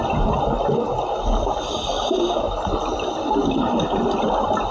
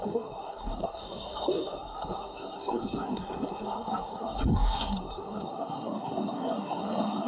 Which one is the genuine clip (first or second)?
first